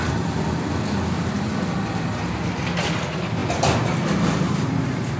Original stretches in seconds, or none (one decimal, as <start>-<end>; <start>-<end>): 0.0-5.2